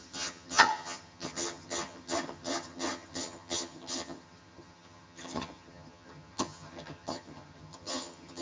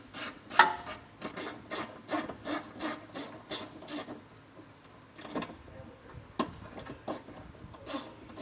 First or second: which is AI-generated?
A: first